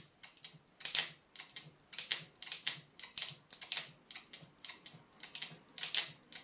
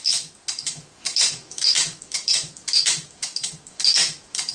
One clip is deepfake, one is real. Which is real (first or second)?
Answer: first